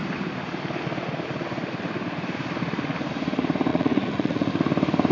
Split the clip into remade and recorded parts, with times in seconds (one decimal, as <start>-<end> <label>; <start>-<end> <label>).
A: 0.0-3.7 recorded; 3.7-4.5 remade; 4.5-5.1 recorded